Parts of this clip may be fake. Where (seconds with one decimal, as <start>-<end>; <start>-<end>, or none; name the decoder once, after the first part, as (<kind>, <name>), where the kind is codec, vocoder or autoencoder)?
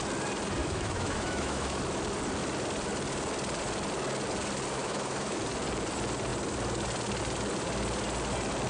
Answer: 0.6-1.8 (autoencoder, DAC-VAE); 4.8-5.4